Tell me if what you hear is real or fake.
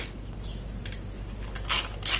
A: real